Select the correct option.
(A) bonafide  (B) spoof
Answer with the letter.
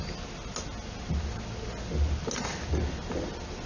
A